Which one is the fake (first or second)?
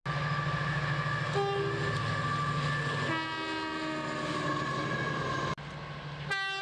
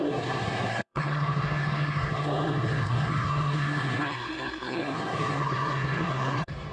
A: second